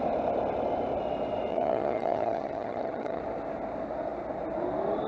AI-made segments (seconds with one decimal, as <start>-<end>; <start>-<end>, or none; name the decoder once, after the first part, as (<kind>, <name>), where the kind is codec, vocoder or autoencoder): 1.5-3.2 (vocoder, HiFi-GAN)